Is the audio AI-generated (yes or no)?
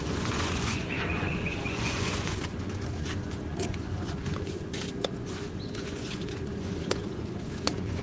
yes